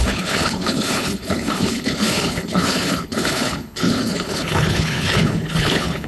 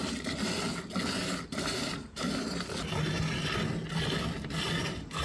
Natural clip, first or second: second